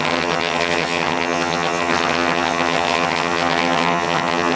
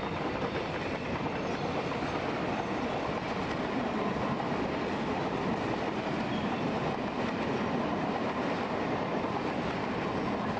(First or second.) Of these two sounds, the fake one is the first